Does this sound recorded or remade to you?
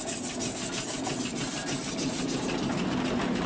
recorded